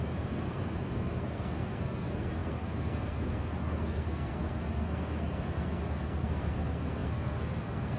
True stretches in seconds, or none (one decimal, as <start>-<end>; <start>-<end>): none